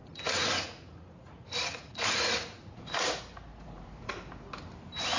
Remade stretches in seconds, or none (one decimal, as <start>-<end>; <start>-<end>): 0.0-3.1; 3.5-4.1